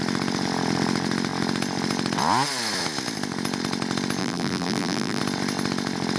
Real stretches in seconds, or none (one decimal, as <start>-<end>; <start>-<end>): 0.0-4.2; 5.2-6.2